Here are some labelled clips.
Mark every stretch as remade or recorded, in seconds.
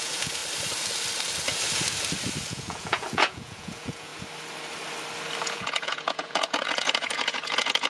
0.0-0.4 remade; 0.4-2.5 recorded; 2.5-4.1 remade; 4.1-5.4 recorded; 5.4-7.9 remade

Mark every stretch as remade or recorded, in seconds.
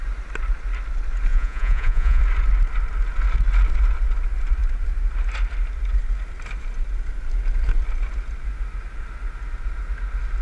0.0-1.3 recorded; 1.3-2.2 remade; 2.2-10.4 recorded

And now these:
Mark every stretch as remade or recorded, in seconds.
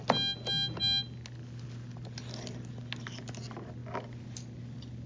0.0-5.1 recorded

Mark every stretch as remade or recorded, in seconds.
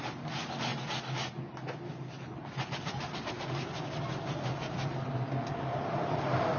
0.0-6.6 recorded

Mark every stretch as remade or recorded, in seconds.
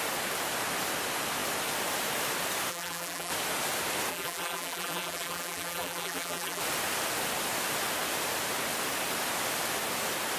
0.0-2.7 recorded; 2.7-3.3 remade; 3.3-4.1 recorded; 4.1-6.6 remade; 6.6-10.4 recorded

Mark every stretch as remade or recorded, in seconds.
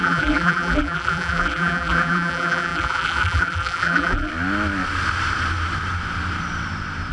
0.0-4.3 remade; 4.3-7.1 recorded